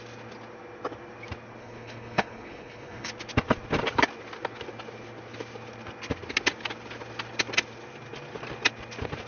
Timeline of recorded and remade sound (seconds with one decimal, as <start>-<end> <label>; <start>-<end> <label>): 0.0-1.6 recorded; 1.6-3.1 remade; 3.1-9.3 recorded